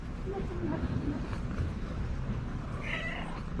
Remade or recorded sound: remade